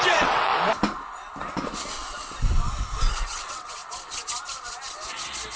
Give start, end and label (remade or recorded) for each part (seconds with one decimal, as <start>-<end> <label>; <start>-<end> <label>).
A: 0.0-0.5 remade; 0.5-3.1 recorded; 3.1-3.8 remade; 3.8-5.6 recorded